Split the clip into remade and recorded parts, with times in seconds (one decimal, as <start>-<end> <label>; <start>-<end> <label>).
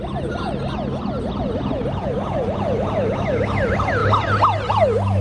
0.0-5.2 recorded